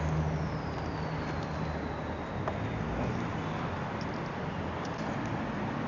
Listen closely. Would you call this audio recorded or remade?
recorded